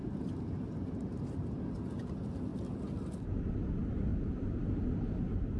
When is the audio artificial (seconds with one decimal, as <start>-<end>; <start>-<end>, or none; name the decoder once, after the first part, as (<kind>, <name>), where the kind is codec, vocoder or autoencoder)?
0.0-1.6 (vocoder, BigVGAN v2); 4.1-4.8